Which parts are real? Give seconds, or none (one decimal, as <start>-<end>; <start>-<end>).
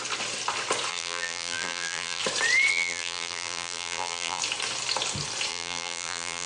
0.0-0.9; 2.2-2.7; 4.4-5.5